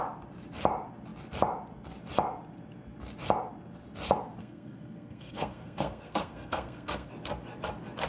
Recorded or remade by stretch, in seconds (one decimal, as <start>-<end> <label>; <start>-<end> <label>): 0.0-4.4 recorded; 4.4-7.1 remade; 7.1-8.1 recorded